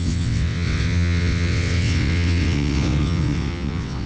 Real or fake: fake